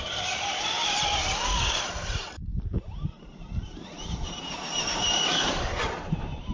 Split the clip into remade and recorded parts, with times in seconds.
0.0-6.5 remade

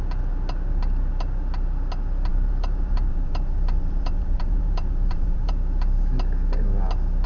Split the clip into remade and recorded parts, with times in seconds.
0.0-2.3 recorded; 2.3-5.5 remade; 5.5-7.3 recorded